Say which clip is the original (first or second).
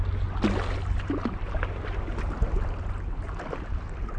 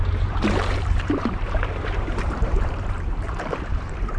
first